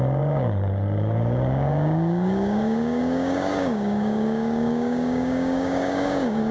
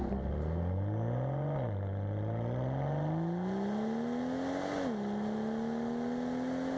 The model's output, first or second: first